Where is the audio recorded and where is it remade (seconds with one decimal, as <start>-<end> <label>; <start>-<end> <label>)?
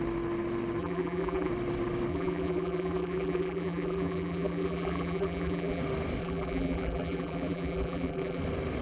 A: 0.0-0.8 recorded; 0.8-1.5 remade; 1.5-2.1 recorded; 2.1-5.8 remade; 5.8-6.2 recorded; 6.2-8.4 remade; 8.4-8.8 recorded